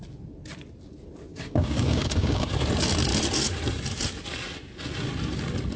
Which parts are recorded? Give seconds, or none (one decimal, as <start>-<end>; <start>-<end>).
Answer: 0.0-1.3; 2.5-5.8